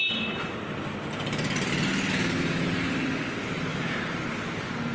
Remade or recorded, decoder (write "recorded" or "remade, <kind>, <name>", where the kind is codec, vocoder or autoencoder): recorded